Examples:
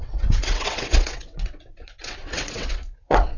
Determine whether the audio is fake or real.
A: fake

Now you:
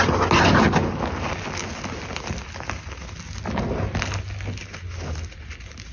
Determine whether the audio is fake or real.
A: real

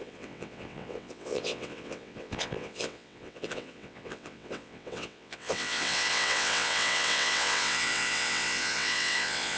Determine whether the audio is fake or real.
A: fake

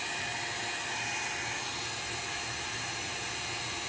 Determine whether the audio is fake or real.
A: real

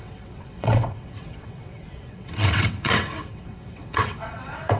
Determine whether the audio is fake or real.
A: fake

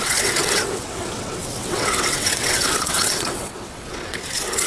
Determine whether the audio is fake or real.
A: fake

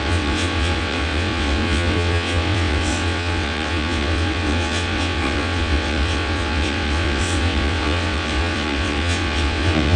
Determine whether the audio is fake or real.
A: fake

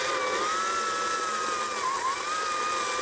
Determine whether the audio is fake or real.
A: real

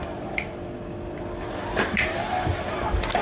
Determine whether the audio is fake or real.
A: real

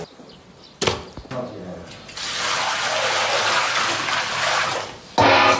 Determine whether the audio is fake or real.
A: real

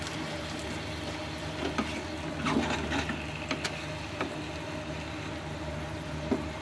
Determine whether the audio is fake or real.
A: real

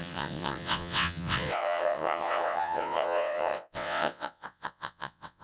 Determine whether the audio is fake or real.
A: fake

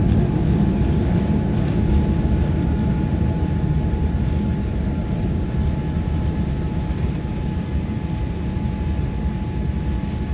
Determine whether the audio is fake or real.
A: real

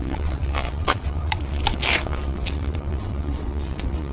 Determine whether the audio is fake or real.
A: fake